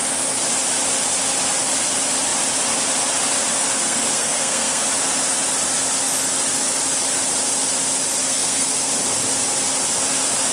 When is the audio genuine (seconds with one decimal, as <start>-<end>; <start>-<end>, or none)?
0.0-3.8; 4.8-8.2; 8.9-10.5